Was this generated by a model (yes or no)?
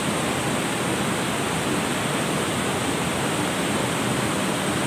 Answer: no